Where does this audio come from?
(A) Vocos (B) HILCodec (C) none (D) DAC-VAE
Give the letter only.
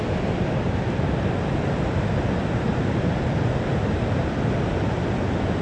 C